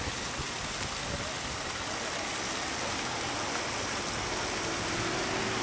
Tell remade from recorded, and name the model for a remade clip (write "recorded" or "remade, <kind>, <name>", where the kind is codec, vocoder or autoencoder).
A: recorded